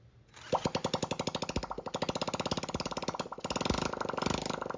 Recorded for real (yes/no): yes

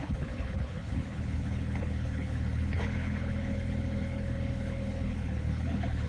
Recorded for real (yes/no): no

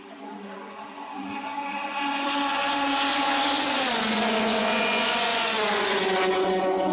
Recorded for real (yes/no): no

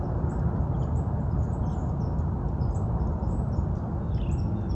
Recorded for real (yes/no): yes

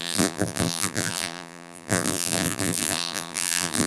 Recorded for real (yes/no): no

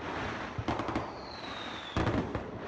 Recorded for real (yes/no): yes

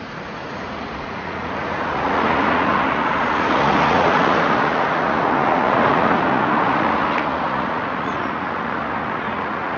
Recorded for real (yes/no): no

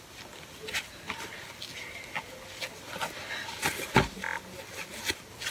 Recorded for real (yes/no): yes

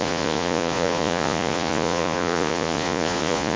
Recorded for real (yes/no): no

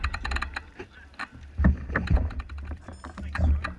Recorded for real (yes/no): yes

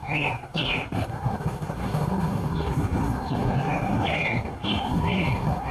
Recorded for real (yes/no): no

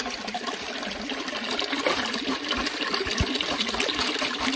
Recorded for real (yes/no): yes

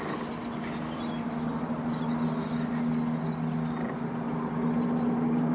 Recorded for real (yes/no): yes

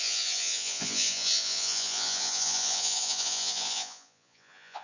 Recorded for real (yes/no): no